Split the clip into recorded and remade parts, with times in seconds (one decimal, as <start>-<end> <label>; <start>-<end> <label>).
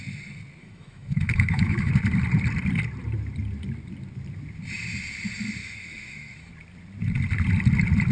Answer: 0.0-0.6 recorded; 0.6-1.9 remade; 1.9-5.6 recorded; 5.6-6.5 remade; 6.5-8.1 recorded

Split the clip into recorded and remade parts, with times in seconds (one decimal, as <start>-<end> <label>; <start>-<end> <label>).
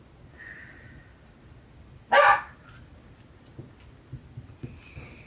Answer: 0.0-5.3 recorded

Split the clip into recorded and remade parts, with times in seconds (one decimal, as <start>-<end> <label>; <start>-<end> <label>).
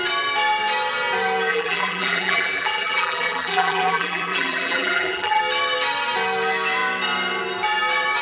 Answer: 0.0-1.5 recorded; 1.5-5.4 remade; 5.4-8.2 recorded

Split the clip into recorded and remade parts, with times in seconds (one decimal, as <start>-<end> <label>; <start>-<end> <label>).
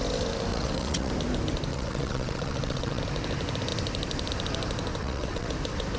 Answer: 0.0-0.5 recorded; 0.5-1.1 remade; 1.1-1.7 recorded; 1.7-3.0 remade; 3.0-5.0 recorded; 5.0-5.5 remade; 5.5-6.0 recorded